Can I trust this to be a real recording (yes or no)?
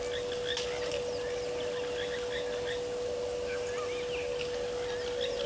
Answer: yes